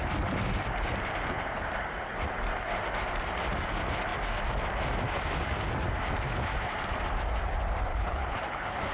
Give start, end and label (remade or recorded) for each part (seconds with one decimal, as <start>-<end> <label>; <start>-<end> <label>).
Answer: 0.0-7.9 recorded; 7.9-8.9 remade